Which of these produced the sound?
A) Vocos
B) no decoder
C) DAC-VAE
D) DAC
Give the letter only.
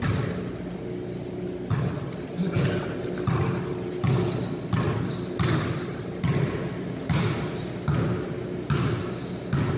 B